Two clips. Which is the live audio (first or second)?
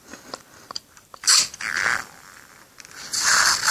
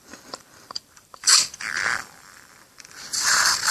first